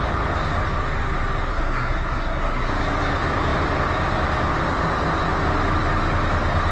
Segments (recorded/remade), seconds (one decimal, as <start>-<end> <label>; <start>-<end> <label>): 0.0-1.5 recorded; 1.5-2.7 remade; 2.7-6.7 recorded